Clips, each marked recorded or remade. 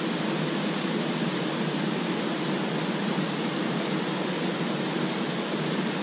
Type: recorded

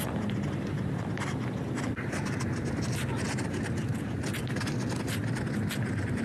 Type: recorded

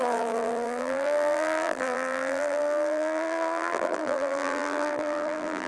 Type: remade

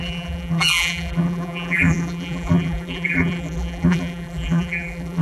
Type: remade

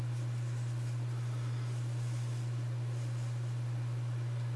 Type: recorded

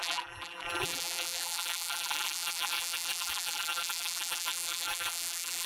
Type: remade